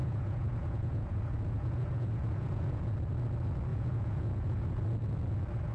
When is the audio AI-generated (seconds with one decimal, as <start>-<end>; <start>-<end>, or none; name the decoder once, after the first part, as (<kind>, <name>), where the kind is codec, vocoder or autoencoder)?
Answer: 0.0-2.8 (vocoder, Vocos); 3.7-4.8